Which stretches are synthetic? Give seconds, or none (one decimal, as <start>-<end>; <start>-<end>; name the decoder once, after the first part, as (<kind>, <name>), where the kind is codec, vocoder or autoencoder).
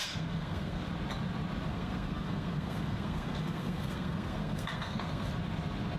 0.0-0.8 (codec, SNAC); 1.7-5.3